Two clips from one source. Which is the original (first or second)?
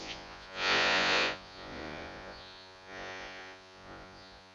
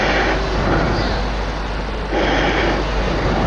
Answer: second